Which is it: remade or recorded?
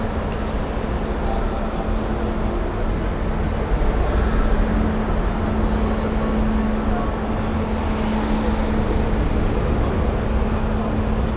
recorded